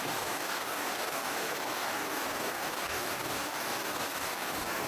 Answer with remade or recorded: remade